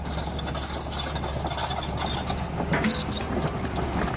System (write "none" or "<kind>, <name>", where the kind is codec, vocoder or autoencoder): none